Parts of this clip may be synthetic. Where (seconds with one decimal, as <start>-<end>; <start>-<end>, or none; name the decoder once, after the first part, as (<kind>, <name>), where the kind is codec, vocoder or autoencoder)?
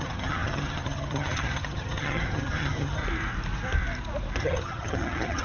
0.0-3.0 (vocoder, HiFi-GAN); 4.4-5.4